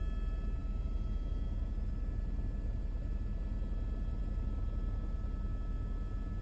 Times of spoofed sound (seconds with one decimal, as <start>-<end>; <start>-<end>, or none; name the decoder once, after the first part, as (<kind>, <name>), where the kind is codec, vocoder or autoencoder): none